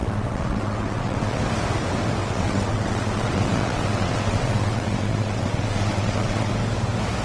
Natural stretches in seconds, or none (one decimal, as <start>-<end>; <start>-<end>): 1.4-2.2; 6.5-7.2